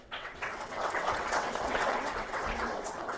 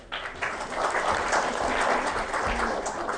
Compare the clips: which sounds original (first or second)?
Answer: second